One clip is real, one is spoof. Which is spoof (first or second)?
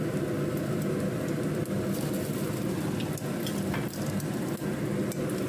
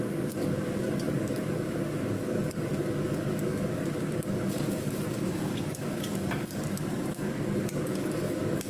second